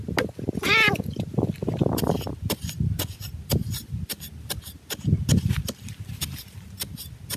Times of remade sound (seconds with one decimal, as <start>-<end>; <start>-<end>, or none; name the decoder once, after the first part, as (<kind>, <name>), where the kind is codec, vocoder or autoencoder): none

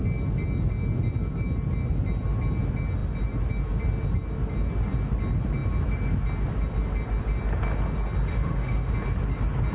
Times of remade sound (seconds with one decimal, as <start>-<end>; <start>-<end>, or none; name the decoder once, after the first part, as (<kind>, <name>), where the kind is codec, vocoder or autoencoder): 8.3-8.9 (autoencoder, DAC-VAE)

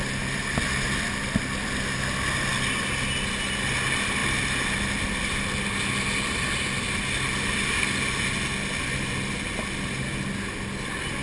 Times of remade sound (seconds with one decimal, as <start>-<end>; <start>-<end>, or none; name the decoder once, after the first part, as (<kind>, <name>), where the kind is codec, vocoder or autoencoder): none

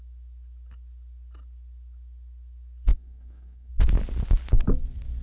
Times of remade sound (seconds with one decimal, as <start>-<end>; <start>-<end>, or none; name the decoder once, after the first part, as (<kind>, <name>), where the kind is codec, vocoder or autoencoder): 2.9-3.7 (codec, DAC)